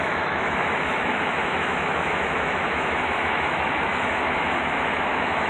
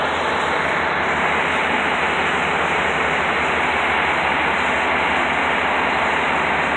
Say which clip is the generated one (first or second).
first